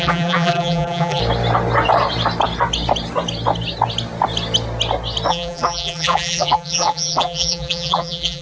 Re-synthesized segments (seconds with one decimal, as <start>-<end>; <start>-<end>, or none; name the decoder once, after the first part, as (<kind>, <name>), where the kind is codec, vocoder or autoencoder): 0.0-1.2 (vocoder, BigVGAN v2); 5.3-8.4